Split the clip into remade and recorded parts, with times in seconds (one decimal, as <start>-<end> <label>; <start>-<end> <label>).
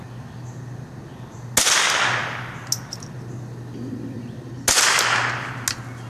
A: 0.0-6.1 recorded